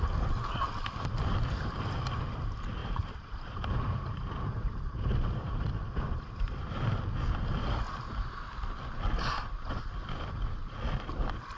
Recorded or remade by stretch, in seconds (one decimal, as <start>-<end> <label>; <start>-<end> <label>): 0.0-2.8 recorded; 2.8-7.0 remade; 7.0-11.6 recorded